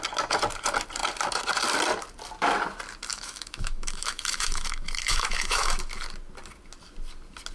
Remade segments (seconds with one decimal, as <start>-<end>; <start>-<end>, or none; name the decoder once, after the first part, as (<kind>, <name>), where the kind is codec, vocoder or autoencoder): 3.1-5.8 (autoencoder, DAC-VAE)